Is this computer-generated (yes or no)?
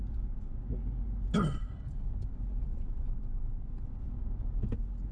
no